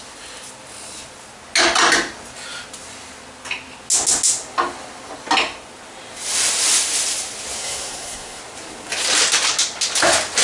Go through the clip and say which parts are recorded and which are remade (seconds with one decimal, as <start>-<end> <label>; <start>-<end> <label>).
0.0-7.6 recorded; 7.6-8.4 remade; 8.4-10.4 recorded